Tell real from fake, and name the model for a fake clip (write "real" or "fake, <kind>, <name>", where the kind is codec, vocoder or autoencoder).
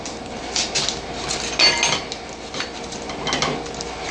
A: real